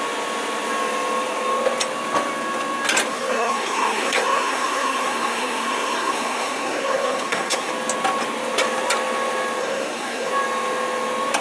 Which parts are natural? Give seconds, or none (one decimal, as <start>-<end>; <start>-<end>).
0.0-3.1; 7.7-9.6; 10.3-11.4